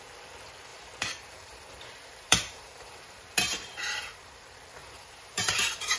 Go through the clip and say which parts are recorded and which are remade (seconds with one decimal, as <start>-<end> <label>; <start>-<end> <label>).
0.0-0.7 recorded; 0.7-4.3 remade; 4.3-4.8 recorded; 4.8-6.0 remade